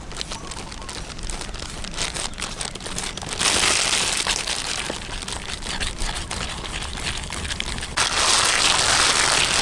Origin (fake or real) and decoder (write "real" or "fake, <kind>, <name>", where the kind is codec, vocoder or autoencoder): real